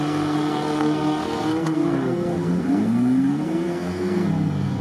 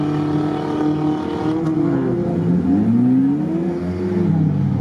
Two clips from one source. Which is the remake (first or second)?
first